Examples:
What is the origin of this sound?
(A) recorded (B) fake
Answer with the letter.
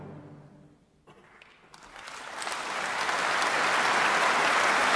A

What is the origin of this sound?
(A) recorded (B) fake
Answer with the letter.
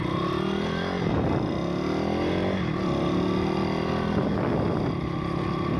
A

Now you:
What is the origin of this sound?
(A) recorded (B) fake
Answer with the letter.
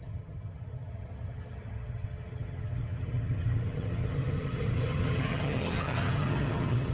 B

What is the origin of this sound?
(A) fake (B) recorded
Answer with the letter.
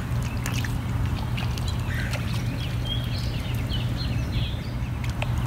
B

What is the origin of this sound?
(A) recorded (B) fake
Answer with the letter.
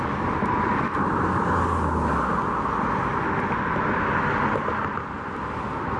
A